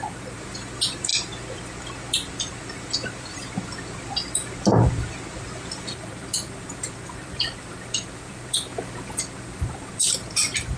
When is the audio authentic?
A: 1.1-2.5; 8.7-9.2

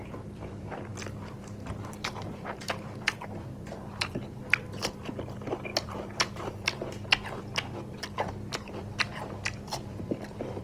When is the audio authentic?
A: none

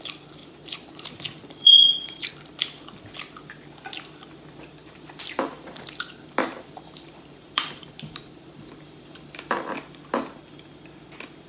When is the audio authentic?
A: 0.0-0.4; 2.3-4.8; 9.7-11.5

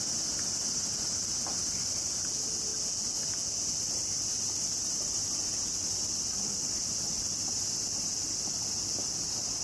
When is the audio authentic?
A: 2.7-3.8

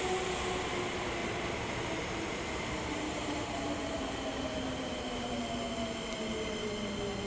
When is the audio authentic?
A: 0.0-1.2; 5.3-7.3